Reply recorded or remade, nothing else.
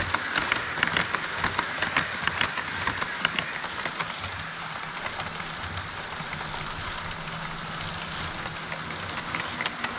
recorded